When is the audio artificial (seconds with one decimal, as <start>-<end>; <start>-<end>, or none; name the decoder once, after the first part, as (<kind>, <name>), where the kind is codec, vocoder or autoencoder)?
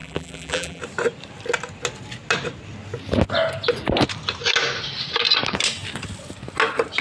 0.0-0.8 (vocoder, BigVGAN v2)